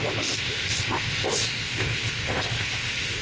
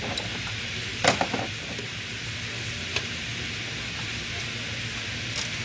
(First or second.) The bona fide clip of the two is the second